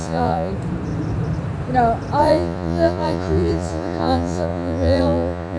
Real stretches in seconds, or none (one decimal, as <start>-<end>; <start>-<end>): 0.5-2.2